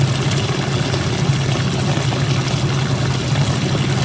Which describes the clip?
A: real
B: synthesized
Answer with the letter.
A